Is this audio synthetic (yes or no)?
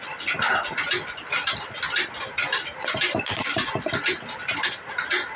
no